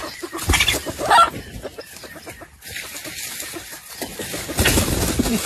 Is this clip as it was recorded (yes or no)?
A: yes